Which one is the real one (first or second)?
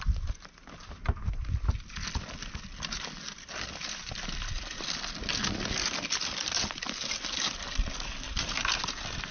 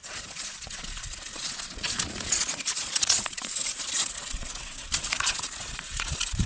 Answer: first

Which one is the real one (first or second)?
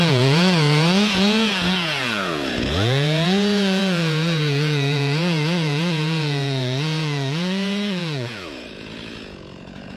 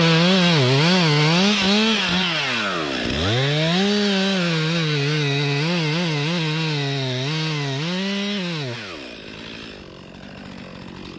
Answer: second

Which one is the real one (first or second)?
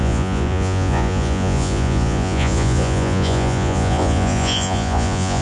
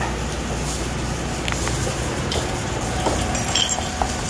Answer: second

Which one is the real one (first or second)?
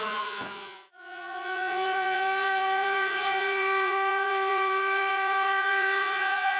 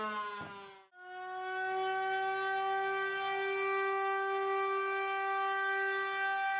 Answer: second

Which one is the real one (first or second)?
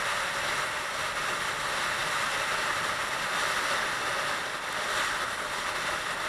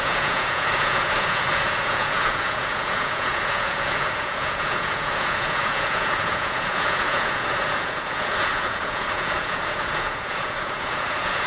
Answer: first